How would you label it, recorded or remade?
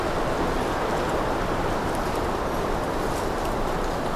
recorded